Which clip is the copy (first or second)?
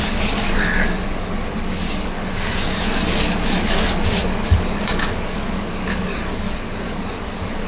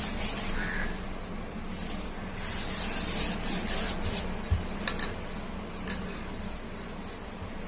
first